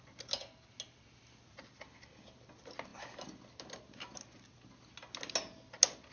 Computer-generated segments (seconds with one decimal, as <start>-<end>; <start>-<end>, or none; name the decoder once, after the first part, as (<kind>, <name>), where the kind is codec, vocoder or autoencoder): none